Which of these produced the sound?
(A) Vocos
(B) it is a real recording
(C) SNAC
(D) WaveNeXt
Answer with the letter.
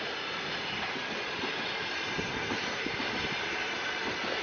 B